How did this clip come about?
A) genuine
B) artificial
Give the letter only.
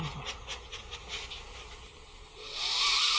A